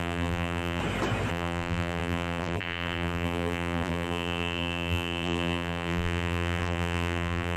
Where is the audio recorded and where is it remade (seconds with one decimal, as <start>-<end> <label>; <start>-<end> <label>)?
0.0-0.8 remade; 0.8-1.3 recorded; 1.3-7.6 remade